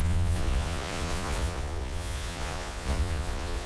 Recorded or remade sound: remade